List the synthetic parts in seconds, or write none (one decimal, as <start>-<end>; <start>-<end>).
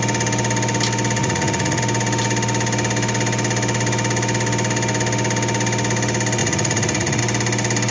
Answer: 1.2-1.8; 6.4-7.2